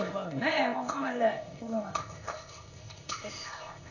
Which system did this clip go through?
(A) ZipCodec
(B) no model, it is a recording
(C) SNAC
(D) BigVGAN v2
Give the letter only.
A